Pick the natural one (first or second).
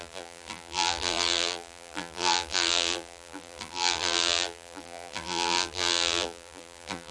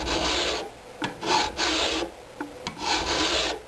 second